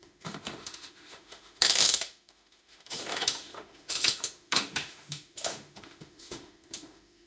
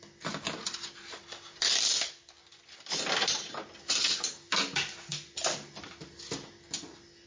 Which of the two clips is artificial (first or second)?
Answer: first